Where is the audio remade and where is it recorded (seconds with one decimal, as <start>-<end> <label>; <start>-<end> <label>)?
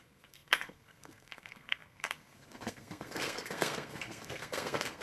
0.0-5.0 remade